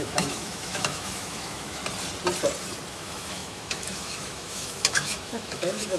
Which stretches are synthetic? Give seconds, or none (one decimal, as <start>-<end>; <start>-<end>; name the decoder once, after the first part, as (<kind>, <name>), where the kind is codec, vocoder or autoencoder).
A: 0.0-1.8 (autoencoder, DAC-VAE); 2.9-6.0